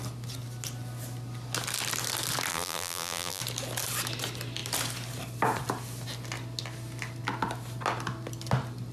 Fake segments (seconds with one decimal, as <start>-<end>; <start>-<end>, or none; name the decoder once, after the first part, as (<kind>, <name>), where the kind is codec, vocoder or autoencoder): 2.5-3.4 (vocoder, BigVGAN v2)